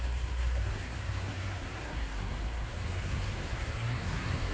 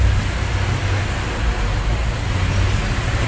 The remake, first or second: first